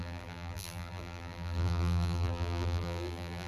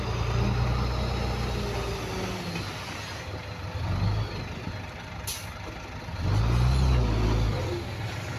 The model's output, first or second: first